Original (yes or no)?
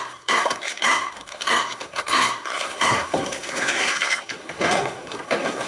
no